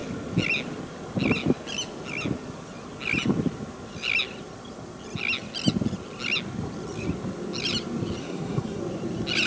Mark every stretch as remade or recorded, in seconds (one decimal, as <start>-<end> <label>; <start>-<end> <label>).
0.0-8.2 recorded; 8.2-8.8 remade; 8.8-9.5 recorded